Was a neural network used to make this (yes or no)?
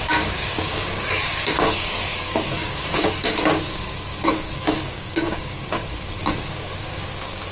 yes